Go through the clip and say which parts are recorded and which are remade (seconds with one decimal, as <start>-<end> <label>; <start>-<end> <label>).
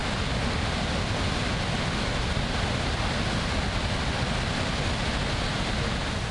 0.0-6.3 recorded